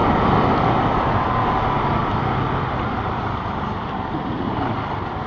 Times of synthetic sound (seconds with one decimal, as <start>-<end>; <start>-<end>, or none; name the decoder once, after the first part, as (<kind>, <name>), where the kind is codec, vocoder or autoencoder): none